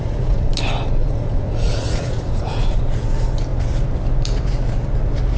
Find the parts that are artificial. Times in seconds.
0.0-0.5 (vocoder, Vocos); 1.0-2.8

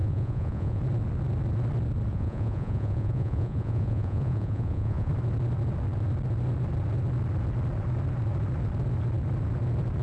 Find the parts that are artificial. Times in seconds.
0.0-0.8 (vocoder, Vocos); 2.1-5.1